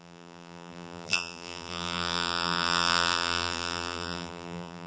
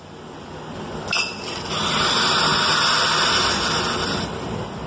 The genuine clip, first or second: second